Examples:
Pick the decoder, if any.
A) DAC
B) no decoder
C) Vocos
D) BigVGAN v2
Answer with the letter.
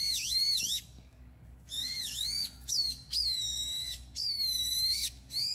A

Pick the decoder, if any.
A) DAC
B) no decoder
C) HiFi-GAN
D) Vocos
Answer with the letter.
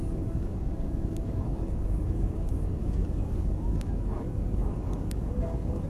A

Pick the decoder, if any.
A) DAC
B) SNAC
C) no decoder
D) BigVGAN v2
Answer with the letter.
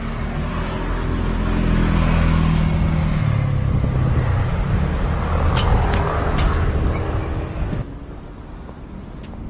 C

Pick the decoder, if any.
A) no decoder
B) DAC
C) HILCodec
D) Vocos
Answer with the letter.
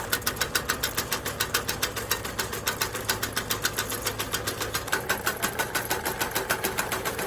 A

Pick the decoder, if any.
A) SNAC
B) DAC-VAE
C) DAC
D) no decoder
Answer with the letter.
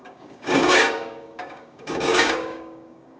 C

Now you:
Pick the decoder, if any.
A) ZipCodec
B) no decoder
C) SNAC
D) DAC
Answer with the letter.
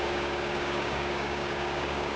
D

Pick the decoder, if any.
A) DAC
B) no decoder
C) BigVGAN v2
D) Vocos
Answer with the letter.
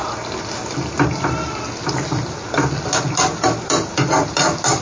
B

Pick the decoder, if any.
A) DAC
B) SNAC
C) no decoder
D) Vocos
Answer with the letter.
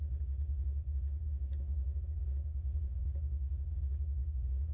A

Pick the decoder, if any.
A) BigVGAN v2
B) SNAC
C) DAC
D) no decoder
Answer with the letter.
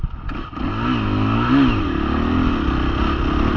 D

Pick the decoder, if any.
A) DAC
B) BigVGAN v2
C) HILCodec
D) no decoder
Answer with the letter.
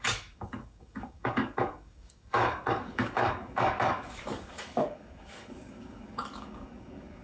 A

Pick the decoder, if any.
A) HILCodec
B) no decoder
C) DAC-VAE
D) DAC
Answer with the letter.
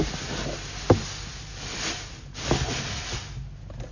B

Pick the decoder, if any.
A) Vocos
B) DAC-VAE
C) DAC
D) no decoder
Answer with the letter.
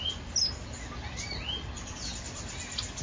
D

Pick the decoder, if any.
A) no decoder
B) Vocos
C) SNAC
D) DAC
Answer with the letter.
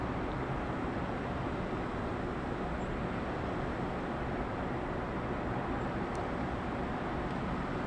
A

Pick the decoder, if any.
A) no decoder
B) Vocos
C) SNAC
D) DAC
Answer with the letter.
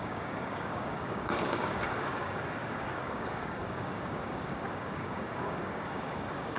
D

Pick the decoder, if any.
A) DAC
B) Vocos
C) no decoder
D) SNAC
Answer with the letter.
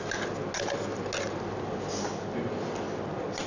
C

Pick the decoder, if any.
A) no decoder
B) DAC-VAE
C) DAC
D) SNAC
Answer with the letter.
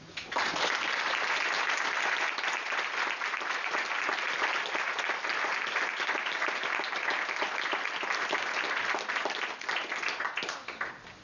A